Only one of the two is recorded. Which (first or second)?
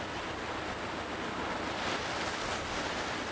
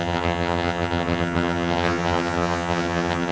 first